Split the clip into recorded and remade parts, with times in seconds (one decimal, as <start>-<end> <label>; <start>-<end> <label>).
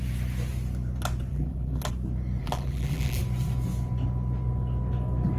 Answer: 0.0-1.3 recorded; 1.3-1.9 remade; 1.9-2.4 recorded; 2.4-3.2 remade; 3.2-5.4 recorded